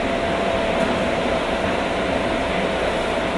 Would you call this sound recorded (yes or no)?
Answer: yes